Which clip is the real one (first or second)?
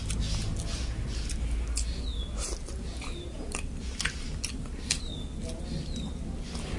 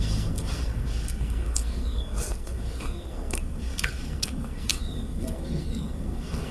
first